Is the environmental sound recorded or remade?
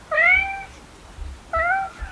recorded